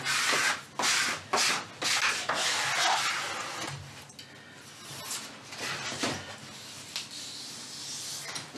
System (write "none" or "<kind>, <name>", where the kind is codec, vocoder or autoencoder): none